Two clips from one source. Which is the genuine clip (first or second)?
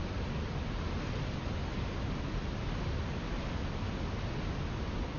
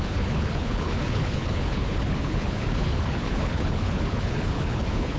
first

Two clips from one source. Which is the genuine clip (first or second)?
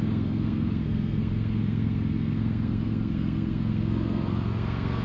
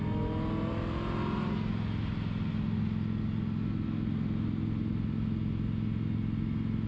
second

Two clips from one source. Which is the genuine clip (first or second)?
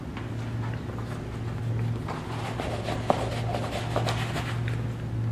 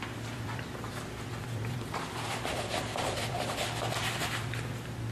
first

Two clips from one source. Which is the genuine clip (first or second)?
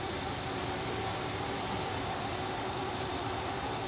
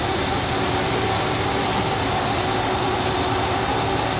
second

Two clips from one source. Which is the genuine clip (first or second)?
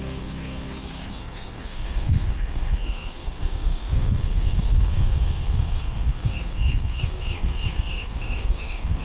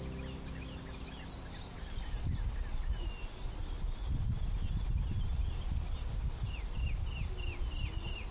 second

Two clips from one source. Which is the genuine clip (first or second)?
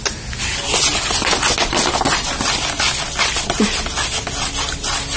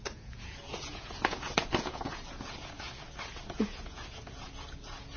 first